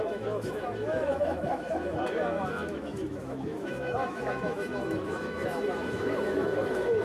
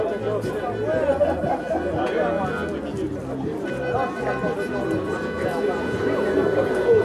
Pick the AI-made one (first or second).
first